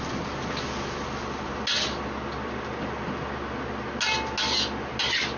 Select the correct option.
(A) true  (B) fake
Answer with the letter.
A